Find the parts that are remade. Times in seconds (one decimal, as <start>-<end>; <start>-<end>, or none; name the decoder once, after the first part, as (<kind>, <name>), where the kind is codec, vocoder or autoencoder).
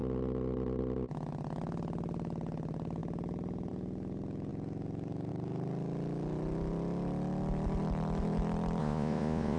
8.8-9.6 (vocoder, Vocos)